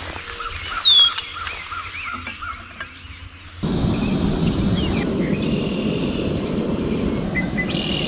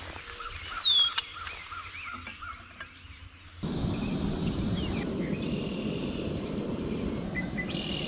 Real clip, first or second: first